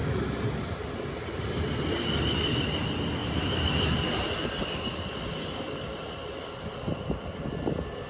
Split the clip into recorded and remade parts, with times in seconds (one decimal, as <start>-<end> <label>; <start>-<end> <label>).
0.0-3.2 recorded; 3.2-4.3 remade; 4.3-8.1 recorded